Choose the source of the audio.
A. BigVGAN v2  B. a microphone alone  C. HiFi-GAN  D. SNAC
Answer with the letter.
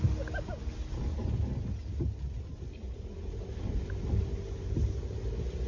B